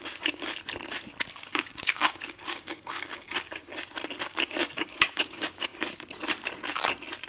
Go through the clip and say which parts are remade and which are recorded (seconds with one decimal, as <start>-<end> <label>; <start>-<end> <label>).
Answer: 0.0-0.6 remade; 0.6-1.3 recorded; 1.3-3.7 remade; 3.7-4.2 recorded; 4.2-5.7 remade; 5.7-7.3 recorded